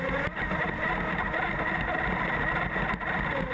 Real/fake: real